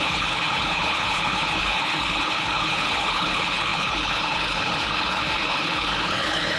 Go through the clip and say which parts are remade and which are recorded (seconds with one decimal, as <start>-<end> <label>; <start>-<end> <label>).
0.0-6.6 remade

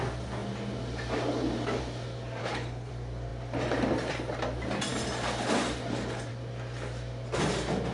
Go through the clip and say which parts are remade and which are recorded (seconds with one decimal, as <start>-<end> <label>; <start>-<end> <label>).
0.0-2.4 recorded; 2.4-2.9 remade; 2.9-7.9 recorded